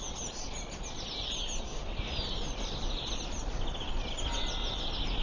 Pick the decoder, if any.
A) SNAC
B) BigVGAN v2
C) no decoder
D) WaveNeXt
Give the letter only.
C